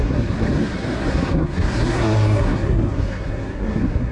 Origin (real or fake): fake